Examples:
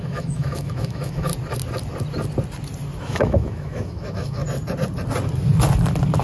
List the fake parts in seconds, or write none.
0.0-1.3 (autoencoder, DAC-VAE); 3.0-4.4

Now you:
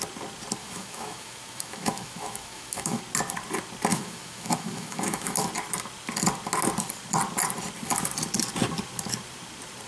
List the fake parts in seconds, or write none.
0.6-3.0 (autoencoder, DAC-VAE); 3.9-5.5